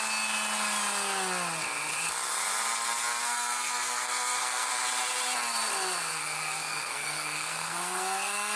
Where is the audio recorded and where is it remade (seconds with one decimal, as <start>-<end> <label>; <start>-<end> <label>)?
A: 0.0-3.2 recorded; 3.2-4.7 remade; 4.7-6.1 recorded; 6.1-8.6 remade